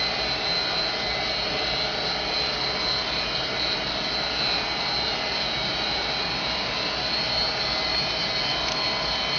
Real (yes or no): yes